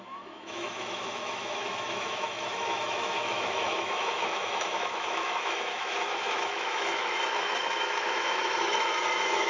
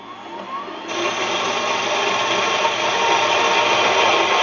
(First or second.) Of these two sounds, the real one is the second